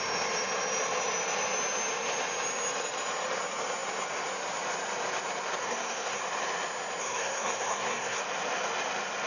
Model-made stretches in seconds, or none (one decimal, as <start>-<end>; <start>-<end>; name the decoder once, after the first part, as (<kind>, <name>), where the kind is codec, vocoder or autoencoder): 5.6-6.2 (codec, SNAC); 7.0-8.2